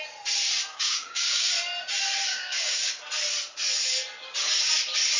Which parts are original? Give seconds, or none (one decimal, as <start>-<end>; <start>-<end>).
0.0-0.7; 1.5-2.3; 2.9-5.2